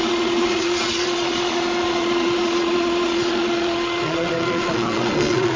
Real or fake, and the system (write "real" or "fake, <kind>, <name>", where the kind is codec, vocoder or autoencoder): fake, vocoder, Vocos